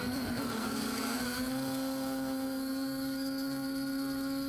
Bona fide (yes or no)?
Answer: no